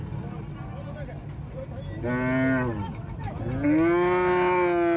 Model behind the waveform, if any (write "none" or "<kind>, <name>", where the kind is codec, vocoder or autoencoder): none